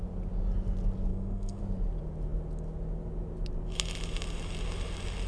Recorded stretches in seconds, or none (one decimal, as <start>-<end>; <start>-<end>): 0.0-1.1; 1.6-5.3